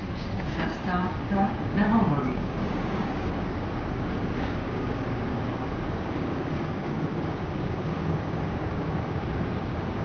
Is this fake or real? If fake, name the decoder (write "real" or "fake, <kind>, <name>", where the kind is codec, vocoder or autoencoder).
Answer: fake, codec, DAC